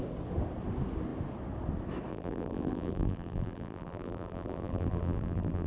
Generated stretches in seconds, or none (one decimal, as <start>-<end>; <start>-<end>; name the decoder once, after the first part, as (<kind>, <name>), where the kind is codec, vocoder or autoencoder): 2.1-5.7 (vocoder, BigVGAN v2)